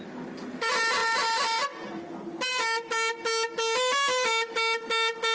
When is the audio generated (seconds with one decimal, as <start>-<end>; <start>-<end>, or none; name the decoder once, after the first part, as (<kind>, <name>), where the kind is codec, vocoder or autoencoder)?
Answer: none